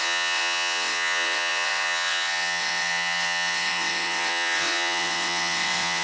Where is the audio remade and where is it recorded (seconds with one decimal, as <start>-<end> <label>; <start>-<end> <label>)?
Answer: 0.0-6.0 remade